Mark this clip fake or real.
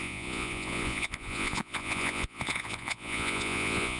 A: fake